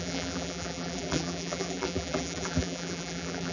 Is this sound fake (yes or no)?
yes